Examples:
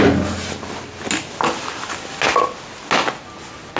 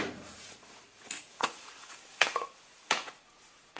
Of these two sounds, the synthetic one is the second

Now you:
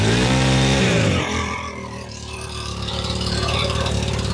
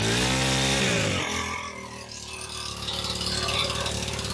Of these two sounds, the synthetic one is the first